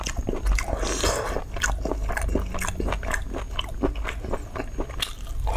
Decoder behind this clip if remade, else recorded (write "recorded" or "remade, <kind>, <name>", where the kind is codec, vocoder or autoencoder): recorded